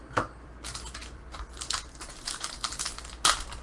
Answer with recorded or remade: remade